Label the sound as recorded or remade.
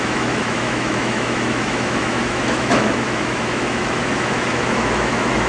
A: remade